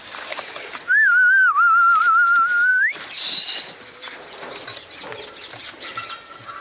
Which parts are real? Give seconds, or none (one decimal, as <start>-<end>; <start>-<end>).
0.0-6.6